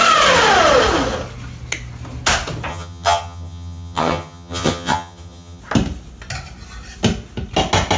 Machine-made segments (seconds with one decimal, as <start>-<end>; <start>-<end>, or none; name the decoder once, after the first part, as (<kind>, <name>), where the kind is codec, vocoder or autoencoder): 2.7-5.6 (vocoder, HiFi-GAN)